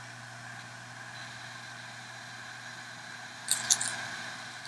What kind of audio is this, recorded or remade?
recorded